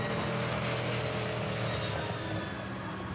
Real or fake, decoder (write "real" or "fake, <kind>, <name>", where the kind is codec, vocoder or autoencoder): real